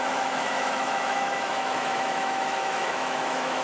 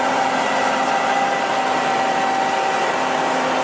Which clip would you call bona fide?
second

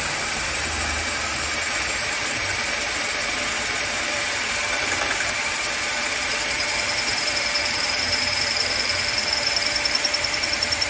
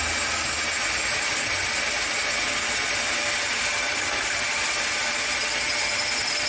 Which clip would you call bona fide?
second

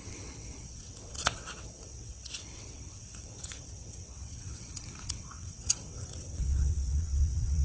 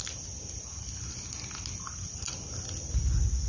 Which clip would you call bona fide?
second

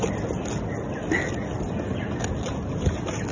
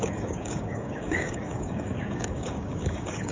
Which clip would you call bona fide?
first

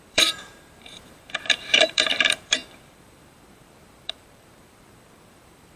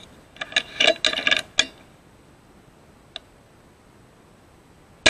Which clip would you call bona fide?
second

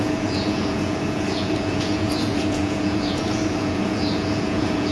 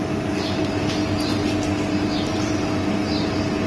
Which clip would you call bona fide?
second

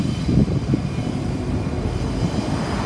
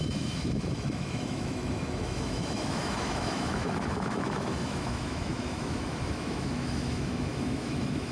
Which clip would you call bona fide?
first